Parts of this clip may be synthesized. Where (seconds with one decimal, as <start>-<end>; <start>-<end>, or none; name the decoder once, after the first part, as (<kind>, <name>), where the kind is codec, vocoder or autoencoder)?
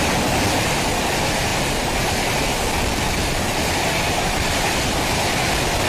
none